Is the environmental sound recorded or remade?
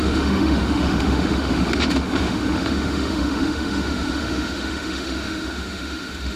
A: remade